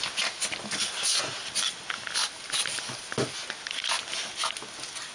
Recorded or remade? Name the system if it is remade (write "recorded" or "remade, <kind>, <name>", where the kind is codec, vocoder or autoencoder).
recorded